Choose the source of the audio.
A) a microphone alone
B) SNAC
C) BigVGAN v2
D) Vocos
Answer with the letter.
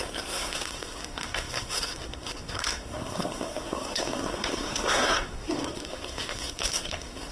B